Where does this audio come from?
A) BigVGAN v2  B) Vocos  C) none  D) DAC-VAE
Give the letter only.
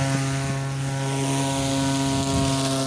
C